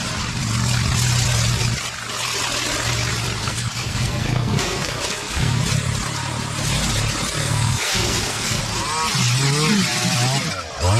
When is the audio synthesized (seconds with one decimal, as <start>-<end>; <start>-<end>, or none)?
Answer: 3.4-5.6; 7.4-8.6

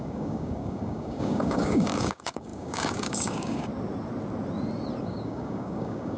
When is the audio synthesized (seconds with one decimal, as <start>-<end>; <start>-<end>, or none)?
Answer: 0.0-3.7; 5.0-6.2